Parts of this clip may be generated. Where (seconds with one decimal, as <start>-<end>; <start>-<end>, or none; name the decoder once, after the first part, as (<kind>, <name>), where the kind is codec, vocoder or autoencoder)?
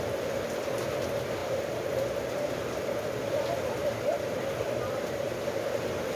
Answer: none